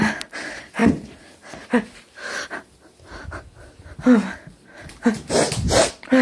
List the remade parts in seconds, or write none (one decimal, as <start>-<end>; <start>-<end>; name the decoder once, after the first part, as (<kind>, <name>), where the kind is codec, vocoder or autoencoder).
none